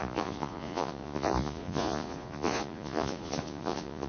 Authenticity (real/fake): fake